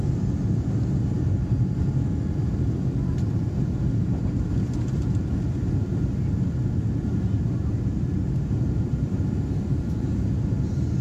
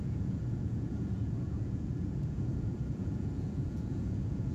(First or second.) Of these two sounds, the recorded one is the first